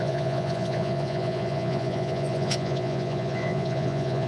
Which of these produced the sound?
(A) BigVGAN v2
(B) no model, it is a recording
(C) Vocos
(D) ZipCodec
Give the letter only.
C